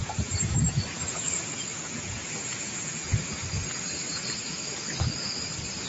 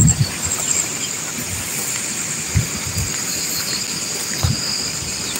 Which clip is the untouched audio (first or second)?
second